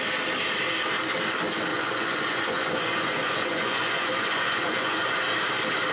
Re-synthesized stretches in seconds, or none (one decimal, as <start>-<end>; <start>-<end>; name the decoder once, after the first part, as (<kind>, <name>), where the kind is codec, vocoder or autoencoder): 1.7-5.2 (vocoder, Vocos)